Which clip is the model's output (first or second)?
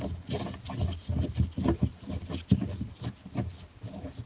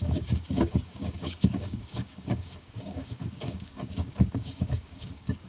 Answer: second